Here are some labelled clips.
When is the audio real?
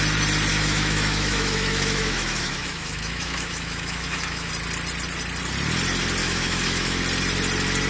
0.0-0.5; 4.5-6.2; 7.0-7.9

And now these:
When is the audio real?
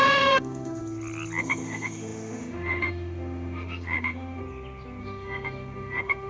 0.8-1.4; 4.4-5.0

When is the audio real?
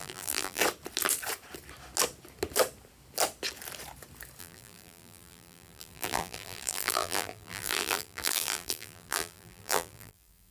0.6-4.4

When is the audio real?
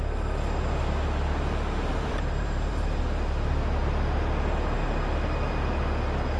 0.0-1.9; 3.0-6.4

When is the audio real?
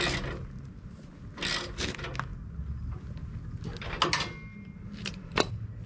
0.0-5.9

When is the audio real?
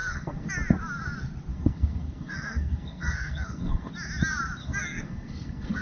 0.5-1.5; 3.9-4.6